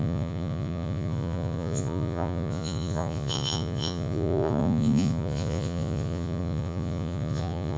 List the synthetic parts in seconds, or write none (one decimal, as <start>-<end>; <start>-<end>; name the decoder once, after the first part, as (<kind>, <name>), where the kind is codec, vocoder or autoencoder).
0.0-7.8 (vocoder, Vocos)